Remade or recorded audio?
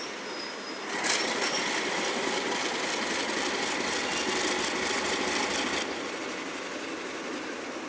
remade